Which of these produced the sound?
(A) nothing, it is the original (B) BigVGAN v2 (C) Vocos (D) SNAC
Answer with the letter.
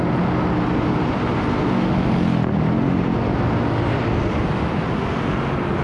A